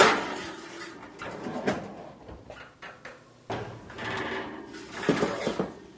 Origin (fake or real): real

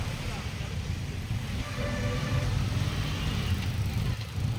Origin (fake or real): fake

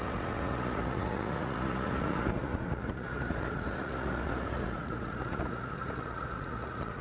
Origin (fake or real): fake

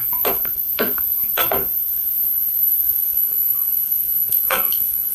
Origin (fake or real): fake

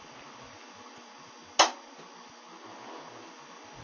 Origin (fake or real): real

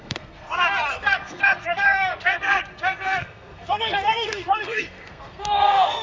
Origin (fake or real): fake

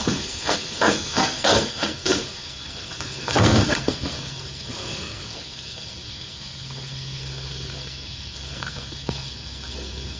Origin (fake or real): fake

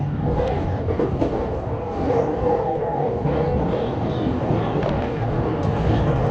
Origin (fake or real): fake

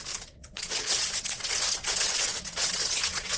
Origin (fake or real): fake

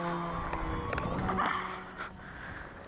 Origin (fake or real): real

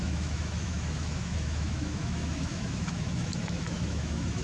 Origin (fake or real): fake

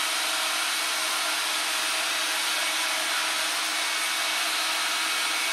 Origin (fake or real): real